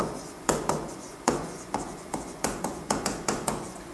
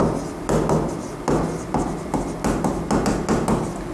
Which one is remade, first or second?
first